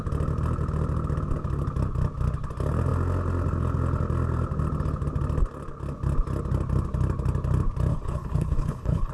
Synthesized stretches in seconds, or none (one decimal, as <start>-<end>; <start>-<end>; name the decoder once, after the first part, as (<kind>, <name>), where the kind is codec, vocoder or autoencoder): 7.9-9.1 (codec, HILCodec)